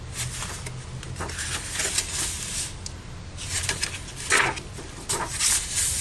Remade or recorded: recorded